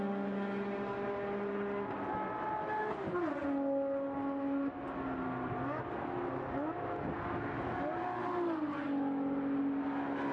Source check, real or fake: real